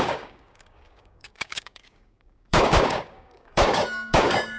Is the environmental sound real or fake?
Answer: fake